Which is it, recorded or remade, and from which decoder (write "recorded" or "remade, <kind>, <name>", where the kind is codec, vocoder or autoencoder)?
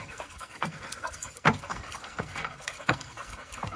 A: remade, codec, SNAC